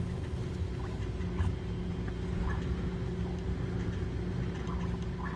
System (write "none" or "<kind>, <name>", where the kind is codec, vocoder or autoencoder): none